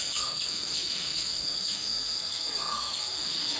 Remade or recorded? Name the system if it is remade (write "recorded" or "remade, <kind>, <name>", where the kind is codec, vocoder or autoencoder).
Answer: remade, codec, SNAC